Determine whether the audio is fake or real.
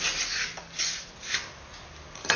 real